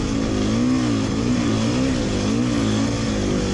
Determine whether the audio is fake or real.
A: real